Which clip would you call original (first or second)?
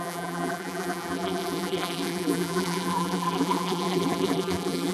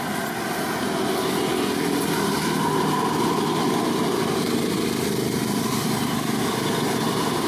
second